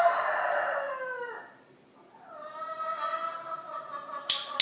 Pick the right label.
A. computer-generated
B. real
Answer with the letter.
B